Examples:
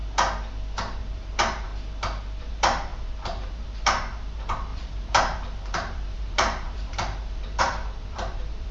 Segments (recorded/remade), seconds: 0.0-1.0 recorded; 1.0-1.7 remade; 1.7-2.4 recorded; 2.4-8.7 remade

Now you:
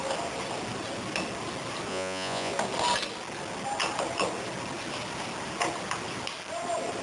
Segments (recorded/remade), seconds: 0.0-1.9 recorded; 1.9-2.5 remade; 2.5-7.0 recorded

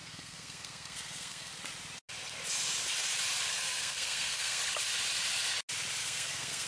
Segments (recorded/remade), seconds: 0.0-1.5 remade; 1.5-3.5 recorded; 3.5-4.6 remade; 4.6-6.0 recorded; 6.0-6.7 remade

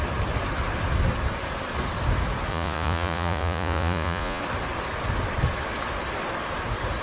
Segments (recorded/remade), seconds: 0.0-2.5 recorded; 2.5-4.4 remade; 4.4-7.0 recorded

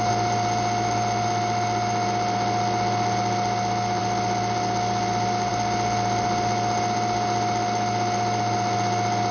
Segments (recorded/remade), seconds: 0.0-9.3 recorded